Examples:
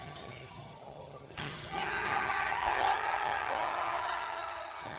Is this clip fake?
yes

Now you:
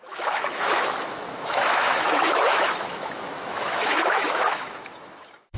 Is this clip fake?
yes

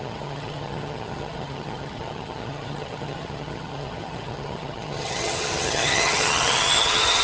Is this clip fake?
yes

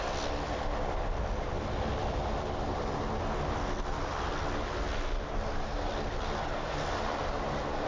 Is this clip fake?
no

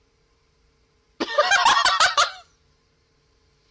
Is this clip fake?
yes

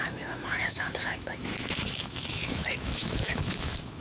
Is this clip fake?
yes